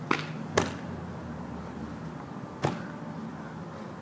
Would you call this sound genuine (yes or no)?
yes